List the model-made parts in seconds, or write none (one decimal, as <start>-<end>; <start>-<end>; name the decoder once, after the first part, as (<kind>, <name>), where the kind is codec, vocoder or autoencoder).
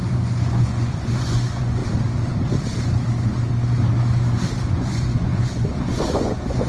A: 0.0-1.8 (vocoder, Vocos); 4.7-6.7